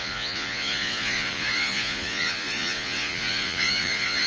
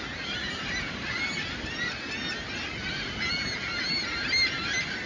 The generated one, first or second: first